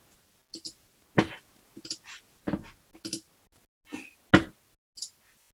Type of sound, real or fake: real